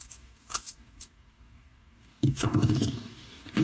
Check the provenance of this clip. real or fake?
fake